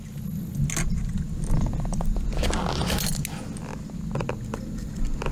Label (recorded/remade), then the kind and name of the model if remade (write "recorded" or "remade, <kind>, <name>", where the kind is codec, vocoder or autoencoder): recorded